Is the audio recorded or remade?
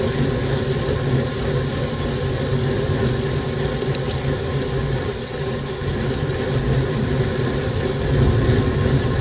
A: recorded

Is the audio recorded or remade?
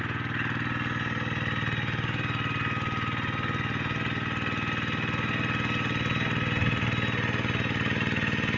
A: recorded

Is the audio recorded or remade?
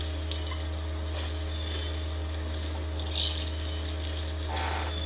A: recorded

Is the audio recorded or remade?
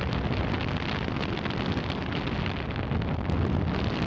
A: recorded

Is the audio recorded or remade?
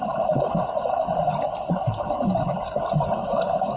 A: recorded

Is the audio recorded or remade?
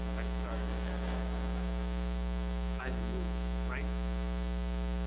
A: remade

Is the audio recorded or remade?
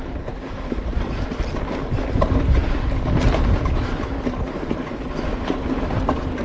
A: recorded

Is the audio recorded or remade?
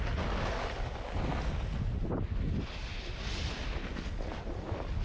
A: recorded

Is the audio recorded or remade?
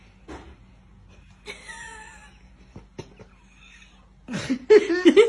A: recorded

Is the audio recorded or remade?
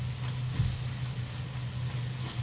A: recorded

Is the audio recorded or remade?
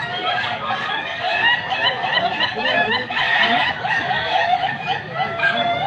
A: remade